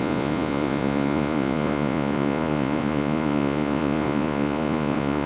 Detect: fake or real fake